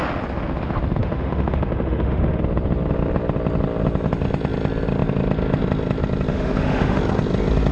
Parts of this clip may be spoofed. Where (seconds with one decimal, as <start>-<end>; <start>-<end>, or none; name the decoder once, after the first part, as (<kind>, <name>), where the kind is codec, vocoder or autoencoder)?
1.0-2.4 (autoencoder, DAC-VAE); 6.3-7.0